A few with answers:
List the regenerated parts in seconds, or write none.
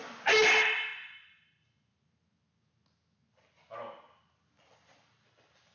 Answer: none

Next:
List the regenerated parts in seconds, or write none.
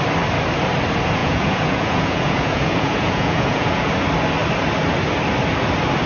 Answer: 1.2-3.9 (vocoder, Vocos)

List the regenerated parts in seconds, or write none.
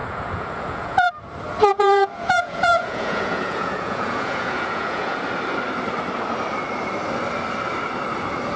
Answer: 0.0-1.1 (vocoder, Vocos); 1.7-5.2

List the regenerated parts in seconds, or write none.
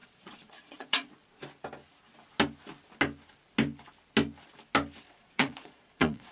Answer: 0.0-1.4 (vocoder, Vocos); 5.2-6.3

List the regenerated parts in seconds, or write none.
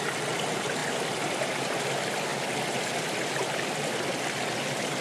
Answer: none